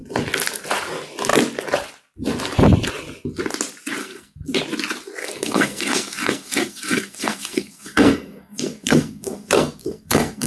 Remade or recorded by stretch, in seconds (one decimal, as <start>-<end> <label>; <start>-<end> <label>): 0.0-4.0 recorded; 4.0-4.6 remade; 4.6-5.2 recorded; 5.2-10.5 remade